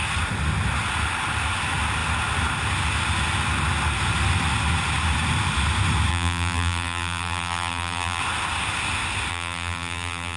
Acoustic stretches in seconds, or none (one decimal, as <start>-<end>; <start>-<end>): 0.0-6.1; 8.2-9.3

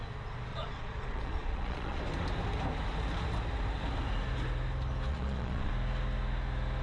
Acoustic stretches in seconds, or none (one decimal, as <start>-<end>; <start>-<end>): 0.0-0.5; 2.0-5.1; 5.7-6.8

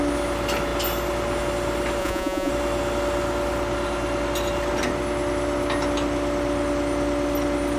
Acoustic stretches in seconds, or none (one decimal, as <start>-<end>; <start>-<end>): 0.0-2.0; 2.5-7.8